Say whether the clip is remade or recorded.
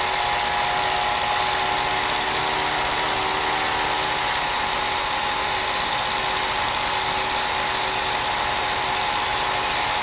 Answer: recorded